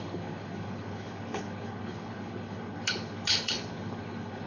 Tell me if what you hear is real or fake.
fake